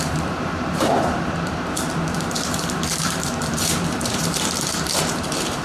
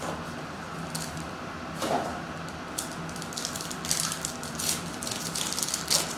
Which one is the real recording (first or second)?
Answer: second